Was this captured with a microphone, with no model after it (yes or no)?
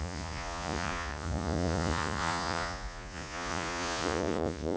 no